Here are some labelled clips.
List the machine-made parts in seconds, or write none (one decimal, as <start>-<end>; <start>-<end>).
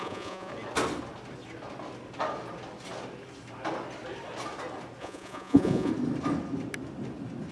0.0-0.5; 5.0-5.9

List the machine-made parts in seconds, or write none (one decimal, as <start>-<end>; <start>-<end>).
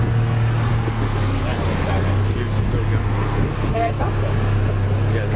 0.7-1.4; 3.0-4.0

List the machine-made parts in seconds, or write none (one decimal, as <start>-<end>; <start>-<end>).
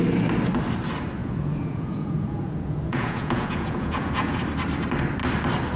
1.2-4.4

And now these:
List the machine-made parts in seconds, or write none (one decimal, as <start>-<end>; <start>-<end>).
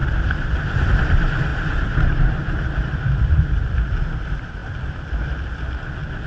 0.0-0.9; 1.5-3.7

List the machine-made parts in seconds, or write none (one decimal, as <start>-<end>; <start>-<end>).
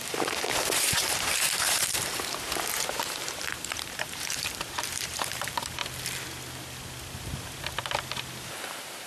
0.0-5.8; 8.4-9.1